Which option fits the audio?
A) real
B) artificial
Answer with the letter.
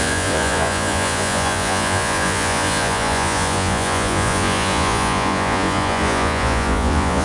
B